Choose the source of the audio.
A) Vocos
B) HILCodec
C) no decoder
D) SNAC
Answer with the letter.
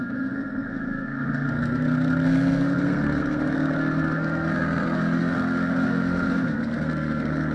D